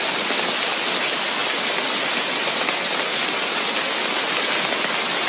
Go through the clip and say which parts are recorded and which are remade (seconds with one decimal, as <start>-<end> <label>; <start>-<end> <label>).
0.0-5.3 recorded